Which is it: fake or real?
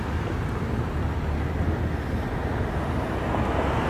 real